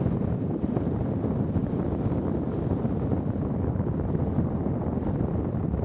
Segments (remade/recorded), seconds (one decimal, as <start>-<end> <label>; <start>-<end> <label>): 0.0-5.8 recorded